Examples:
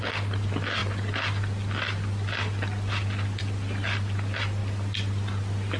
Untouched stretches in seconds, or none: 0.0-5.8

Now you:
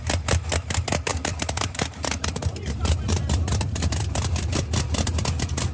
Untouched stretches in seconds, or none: 0.0-1.1; 4.5-5.7